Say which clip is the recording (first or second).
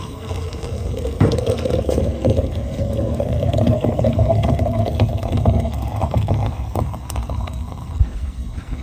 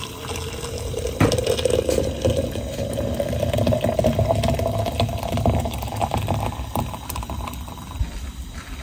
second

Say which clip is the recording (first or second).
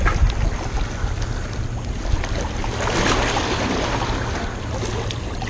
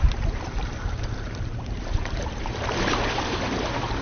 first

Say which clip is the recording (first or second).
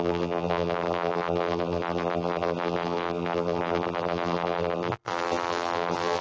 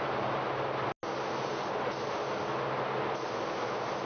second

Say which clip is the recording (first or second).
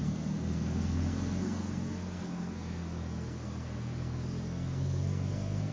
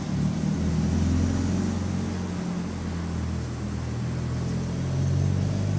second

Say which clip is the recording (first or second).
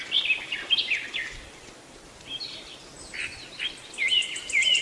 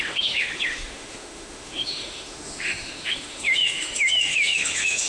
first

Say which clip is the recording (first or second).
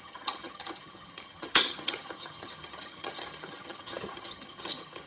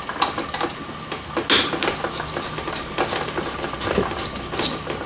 second